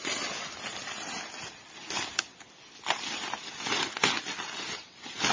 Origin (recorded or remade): recorded